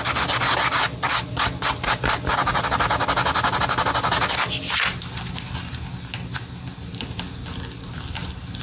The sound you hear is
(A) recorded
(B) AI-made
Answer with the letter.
A